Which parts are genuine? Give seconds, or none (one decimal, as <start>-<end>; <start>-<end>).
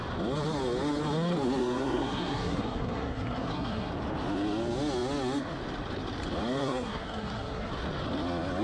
0.0-1.6; 3.9-6.6; 7.7-8.6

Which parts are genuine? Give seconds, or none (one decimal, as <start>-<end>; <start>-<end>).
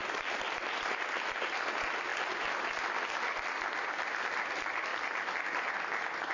0.0-6.3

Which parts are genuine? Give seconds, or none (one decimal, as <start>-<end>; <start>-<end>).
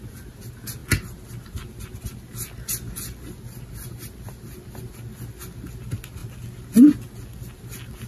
0.0-8.1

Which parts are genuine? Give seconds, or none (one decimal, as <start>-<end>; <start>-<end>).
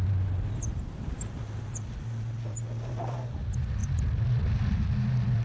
0.0-5.4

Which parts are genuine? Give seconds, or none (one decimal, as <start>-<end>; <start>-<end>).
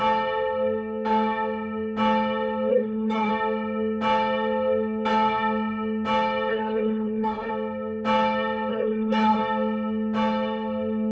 0.0-2.7; 3.3-6.5; 7.5-8.7; 9.4-11.1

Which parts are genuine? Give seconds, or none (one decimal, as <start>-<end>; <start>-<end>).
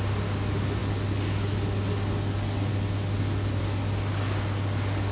0.0-5.1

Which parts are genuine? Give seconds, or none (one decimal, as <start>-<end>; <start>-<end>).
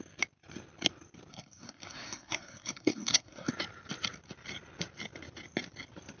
0.0-1.3; 3.5-6.2